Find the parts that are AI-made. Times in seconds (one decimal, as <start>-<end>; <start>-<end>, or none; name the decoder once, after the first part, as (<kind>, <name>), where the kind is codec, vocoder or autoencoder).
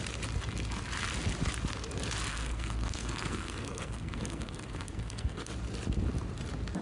2.3-5.5 (codec, SNAC)